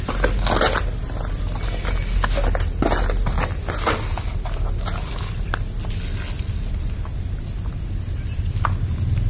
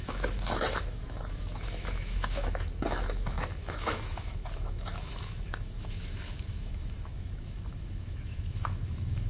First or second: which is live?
first